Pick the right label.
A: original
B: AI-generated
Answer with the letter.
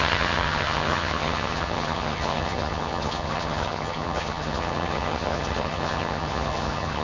B